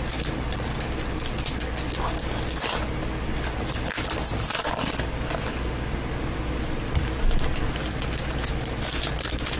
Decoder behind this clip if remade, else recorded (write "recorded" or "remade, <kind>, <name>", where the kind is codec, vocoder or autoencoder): recorded